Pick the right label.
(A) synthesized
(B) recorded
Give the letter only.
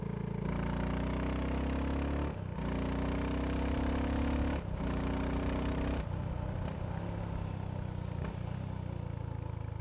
B